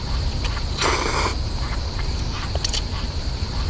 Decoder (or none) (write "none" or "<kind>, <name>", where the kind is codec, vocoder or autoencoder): vocoder, BigVGAN v2